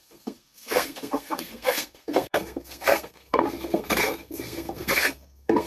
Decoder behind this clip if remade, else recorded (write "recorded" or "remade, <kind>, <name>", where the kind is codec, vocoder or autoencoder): remade, codec, SNAC